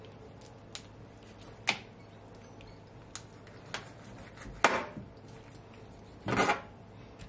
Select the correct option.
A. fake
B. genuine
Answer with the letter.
B